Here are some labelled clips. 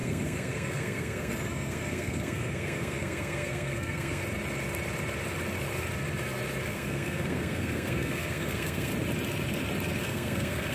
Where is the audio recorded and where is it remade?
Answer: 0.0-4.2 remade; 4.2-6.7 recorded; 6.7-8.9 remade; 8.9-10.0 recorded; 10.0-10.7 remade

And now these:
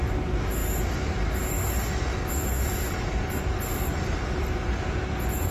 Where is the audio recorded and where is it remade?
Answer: 0.0-5.5 recorded

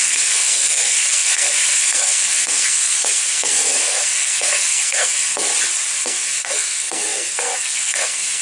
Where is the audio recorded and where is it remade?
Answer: 0.0-5.5 remade; 5.5-6.0 recorded; 6.0-8.4 remade

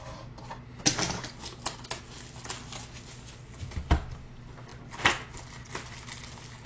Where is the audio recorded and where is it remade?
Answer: 0.0-6.7 recorded